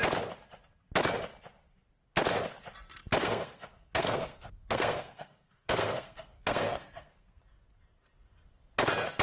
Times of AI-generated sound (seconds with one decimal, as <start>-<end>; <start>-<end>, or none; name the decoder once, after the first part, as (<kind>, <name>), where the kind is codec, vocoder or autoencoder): 3.2-7.4 (codec, SNAC)

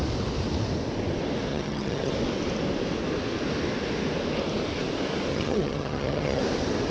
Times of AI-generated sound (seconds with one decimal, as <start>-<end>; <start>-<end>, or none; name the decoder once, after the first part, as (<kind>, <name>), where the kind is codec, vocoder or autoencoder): 1.5-2.1 (vocoder, HiFi-GAN); 5.3-6.4

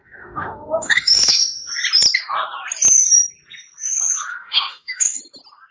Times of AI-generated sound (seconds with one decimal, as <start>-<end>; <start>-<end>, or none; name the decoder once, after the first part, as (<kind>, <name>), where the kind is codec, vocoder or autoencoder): 0.0-1.7 (autoencoder, DAC-VAE); 4.3-5.2

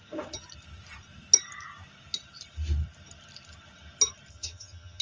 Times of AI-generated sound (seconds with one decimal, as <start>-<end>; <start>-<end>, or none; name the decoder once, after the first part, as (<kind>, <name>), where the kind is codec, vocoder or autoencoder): 4.3-5.0 (vocoder, HiFi-GAN)

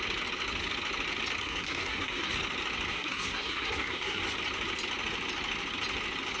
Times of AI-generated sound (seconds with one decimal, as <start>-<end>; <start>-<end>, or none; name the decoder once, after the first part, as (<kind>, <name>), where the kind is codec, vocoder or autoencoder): 1.4-2.3 (codec, SNAC); 2.9-4.2

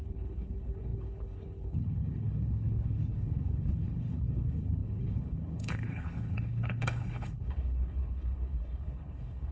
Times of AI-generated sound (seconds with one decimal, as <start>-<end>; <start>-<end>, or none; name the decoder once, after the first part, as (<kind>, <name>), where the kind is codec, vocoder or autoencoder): 0.0-9.5 (codec, HILCodec)